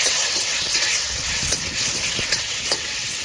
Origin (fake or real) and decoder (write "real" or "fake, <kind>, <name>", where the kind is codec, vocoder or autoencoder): fake, vocoder, WaveNeXt